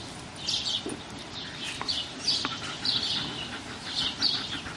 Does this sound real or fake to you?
real